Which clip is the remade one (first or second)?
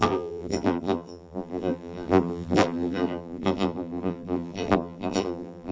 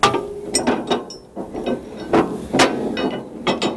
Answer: first